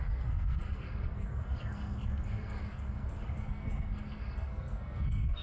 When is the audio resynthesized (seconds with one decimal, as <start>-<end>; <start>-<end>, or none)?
0.0-5.4